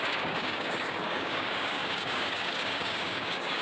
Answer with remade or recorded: remade